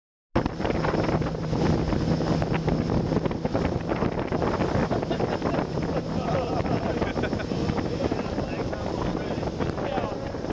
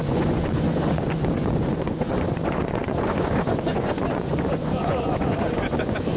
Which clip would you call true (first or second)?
first